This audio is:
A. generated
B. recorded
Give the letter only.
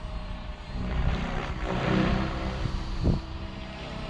A